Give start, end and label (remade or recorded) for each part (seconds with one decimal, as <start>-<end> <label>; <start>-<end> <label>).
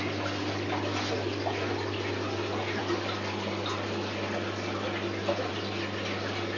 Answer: 0.0-6.6 recorded